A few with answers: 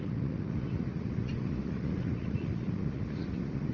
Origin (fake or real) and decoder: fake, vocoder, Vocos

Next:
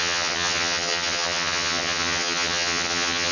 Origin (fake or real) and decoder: fake, vocoder, HiFi-GAN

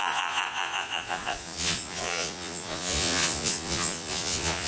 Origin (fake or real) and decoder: fake, vocoder, Vocos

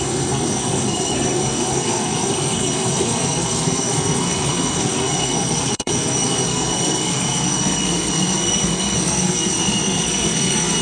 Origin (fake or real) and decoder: fake, codec, SNAC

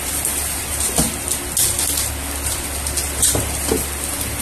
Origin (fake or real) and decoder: real